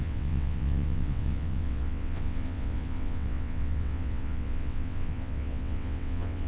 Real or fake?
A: fake